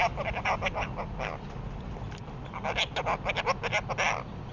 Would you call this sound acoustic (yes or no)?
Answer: yes